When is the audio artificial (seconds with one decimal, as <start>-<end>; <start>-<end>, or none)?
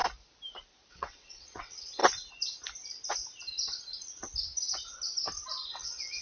0.9-2.0; 5.7-6.2